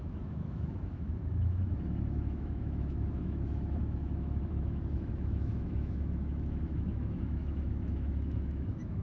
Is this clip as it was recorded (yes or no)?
no